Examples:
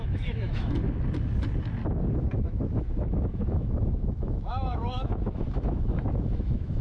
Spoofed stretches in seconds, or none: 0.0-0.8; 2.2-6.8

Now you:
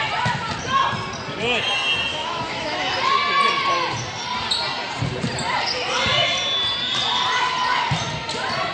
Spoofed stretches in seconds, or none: 2.1-2.9

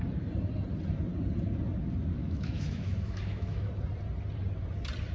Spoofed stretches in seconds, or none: 2.2-3.7

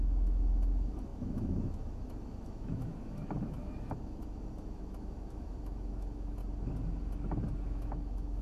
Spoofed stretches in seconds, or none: 0.0-6.4; 7.6-8.4

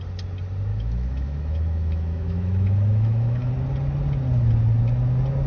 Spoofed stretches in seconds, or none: 0.7-3.5

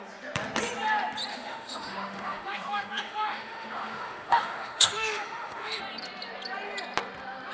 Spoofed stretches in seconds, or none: 1.3-5.8

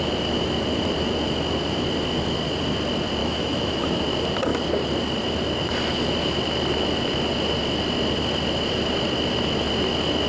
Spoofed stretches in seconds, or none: 3.2-4.0

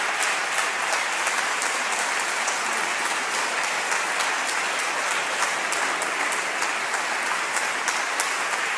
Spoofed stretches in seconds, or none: none